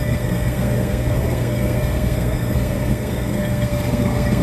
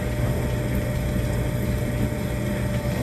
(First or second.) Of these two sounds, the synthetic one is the first